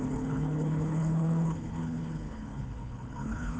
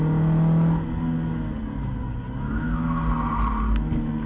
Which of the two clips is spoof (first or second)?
first